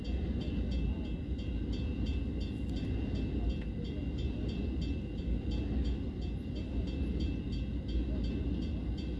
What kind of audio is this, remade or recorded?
recorded